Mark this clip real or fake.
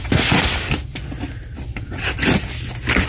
real